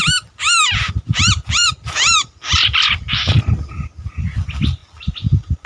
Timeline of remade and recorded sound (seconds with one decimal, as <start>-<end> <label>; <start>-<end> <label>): 0.0-3.4 remade; 3.4-5.7 recorded